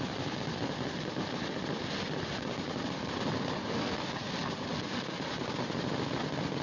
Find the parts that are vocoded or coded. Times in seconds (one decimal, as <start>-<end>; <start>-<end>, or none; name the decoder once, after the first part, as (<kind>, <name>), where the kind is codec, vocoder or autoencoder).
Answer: none